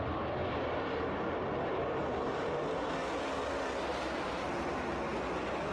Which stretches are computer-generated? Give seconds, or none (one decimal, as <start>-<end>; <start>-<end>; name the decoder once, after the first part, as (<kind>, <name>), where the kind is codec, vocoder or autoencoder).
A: 0.4-1.2 (vocoder, BigVGAN v2); 1.7-2.5; 3.9-4.9